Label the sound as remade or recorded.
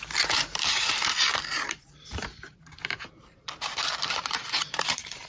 remade